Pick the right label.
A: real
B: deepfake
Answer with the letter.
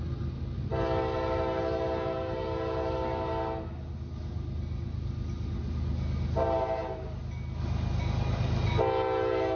A